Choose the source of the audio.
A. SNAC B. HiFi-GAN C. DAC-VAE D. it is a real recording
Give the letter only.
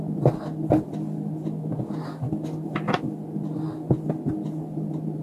D